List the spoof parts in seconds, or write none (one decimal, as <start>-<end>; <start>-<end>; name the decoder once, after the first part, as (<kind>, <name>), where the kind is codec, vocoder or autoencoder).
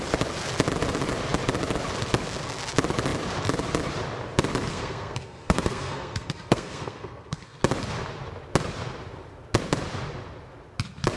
4.7-7.6 (codec, SNAC)